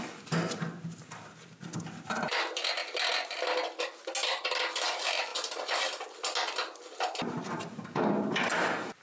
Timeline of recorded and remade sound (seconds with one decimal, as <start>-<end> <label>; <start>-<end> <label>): 0.0-9.0 recorded